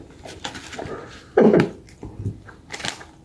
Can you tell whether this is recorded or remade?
recorded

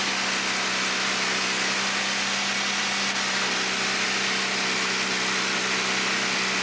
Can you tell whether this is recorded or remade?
recorded